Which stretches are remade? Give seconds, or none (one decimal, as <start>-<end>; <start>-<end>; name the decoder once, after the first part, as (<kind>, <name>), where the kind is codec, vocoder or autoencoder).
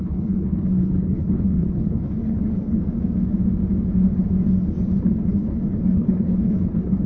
0.0-2.8 (codec, HILCodec); 5.0-7.1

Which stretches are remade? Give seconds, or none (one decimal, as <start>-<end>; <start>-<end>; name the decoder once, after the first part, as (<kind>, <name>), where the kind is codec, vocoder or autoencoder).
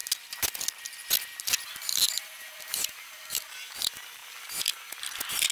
none